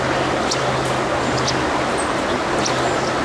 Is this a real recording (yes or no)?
yes